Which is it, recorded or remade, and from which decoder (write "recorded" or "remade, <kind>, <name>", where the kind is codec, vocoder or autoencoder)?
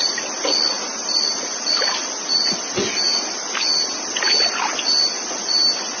recorded